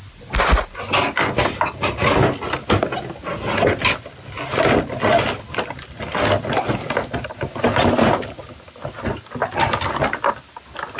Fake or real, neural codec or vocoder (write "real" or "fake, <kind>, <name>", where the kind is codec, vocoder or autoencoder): real